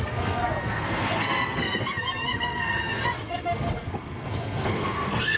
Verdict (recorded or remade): remade